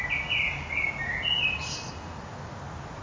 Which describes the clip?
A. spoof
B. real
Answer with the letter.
B